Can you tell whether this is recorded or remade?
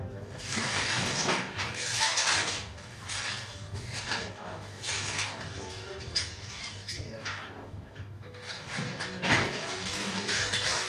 remade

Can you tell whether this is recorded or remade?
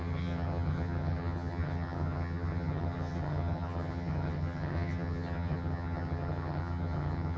remade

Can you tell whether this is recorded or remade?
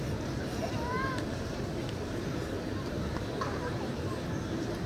remade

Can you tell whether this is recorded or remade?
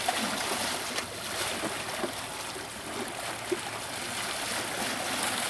recorded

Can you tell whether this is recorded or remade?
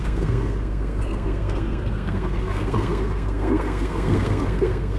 remade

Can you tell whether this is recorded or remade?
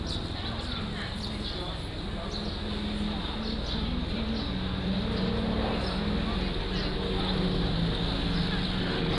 recorded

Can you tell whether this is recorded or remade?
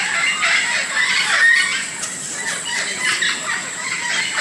recorded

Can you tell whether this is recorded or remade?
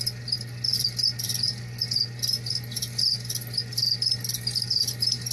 recorded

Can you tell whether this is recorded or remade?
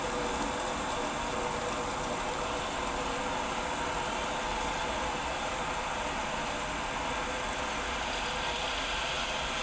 recorded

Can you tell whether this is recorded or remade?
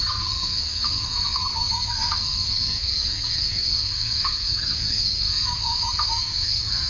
remade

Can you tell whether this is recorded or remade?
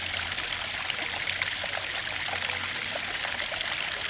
recorded